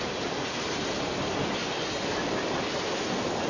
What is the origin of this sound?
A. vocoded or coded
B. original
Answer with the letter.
B